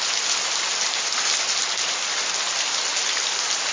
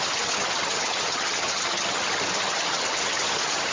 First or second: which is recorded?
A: first